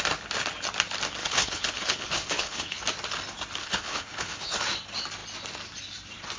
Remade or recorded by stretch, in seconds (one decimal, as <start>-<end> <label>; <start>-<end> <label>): 0.0-1.2 recorded; 1.2-2.8 remade; 2.8-3.6 recorded; 3.6-4.6 remade; 4.6-6.4 recorded

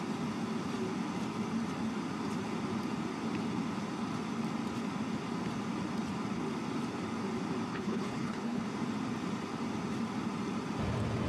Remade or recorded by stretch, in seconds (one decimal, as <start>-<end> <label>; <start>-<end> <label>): 0.0-7.7 recorded; 7.7-8.6 remade; 8.6-11.3 recorded

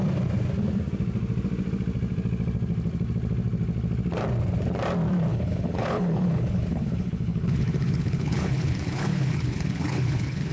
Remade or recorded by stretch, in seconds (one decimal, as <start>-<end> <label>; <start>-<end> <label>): 0.0-5.3 recorded; 5.3-10.5 remade